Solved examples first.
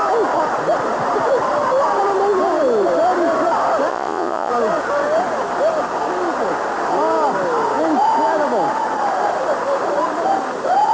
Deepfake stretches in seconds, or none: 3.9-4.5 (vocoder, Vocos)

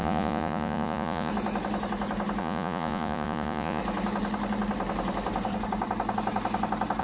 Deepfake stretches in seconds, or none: 0.0-1.3 (vocoder, Vocos); 2.4-3.8

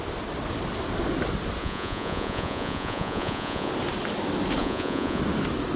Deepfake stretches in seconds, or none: 1.6-3.7 (vocoder, Vocos); 4.6-5.2

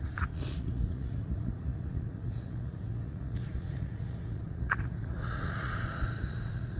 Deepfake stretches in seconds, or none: 0.0-6.8 (vocoder, Vocos)

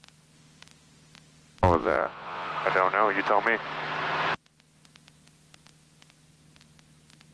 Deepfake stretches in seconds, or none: 1.8-2.5 (vocoder, Vocos)

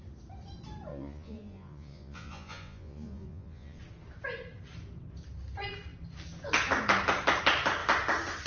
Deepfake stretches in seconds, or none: 0.9-3.8 (vocoder, Vocos)

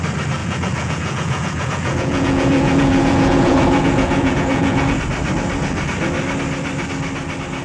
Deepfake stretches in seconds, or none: 0.4-5.0 (vocoder, Vocos)

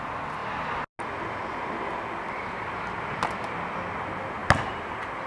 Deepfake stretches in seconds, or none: none